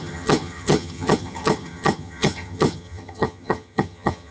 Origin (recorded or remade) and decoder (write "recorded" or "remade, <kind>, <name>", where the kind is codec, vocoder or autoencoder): remade, vocoder, HiFi-GAN